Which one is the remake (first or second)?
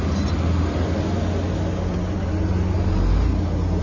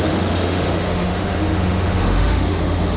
second